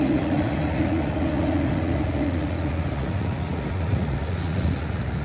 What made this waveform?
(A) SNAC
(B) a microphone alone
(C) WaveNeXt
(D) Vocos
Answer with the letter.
D